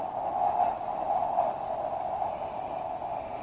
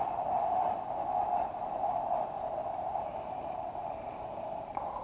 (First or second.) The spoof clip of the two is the second